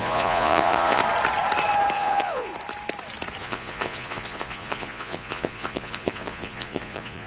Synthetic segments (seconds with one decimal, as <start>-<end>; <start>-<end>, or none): 0.0-1.0; 1.9-2.5; 3.4-7.3